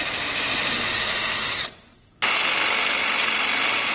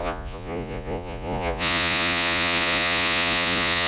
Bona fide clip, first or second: first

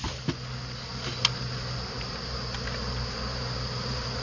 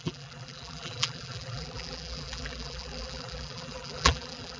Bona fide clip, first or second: first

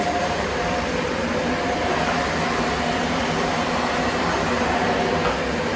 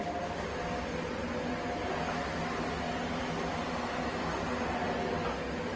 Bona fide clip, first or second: second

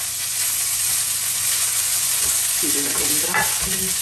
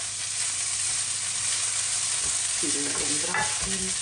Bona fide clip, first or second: second